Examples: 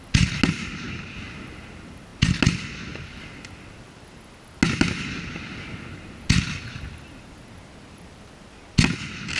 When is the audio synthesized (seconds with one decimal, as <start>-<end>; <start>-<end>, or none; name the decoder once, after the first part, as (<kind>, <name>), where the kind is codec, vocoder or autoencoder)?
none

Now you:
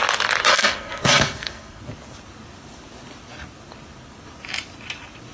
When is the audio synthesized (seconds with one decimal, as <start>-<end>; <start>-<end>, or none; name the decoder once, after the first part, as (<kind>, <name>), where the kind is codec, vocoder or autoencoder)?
0.5-1.8 (codec, SNAC)

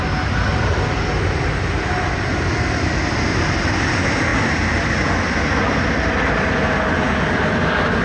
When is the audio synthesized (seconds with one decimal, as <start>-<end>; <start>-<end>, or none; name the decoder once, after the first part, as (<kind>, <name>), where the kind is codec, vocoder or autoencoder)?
3.3-3.9 (vocoder, BigVGAN v2)